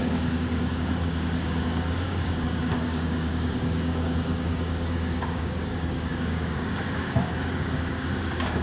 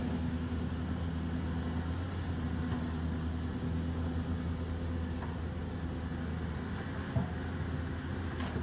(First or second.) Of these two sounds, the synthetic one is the first